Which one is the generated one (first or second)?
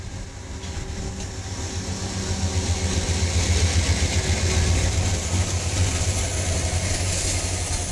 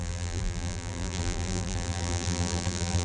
second